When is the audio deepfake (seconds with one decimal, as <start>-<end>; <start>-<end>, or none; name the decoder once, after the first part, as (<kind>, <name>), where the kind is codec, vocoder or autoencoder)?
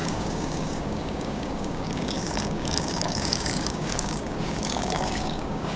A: 0.0-5.8 (codec, DAC)